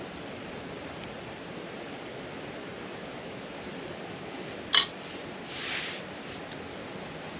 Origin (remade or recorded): recorded